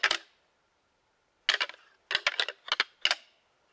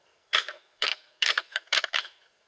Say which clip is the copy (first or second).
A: second